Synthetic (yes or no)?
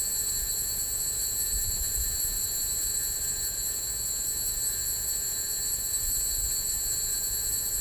yes